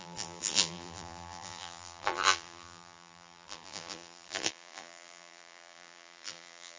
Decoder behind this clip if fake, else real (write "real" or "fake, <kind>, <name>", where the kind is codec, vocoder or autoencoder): fake, vocoder, BigVGAN v2